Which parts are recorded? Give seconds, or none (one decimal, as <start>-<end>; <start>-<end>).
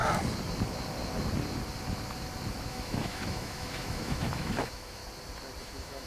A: 0.0-2.7; 5.0-5.6